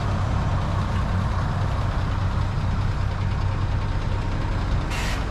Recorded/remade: recorded